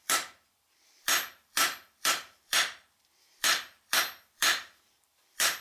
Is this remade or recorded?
remade